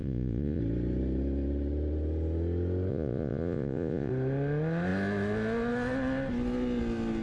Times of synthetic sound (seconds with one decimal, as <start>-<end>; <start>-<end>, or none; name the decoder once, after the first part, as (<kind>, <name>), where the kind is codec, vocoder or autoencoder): 0.0-0.6 (vocoder, Vocos); 2.9-4.1